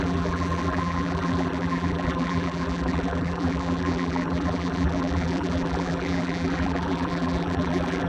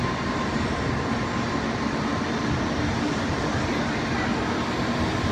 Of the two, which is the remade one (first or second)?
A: first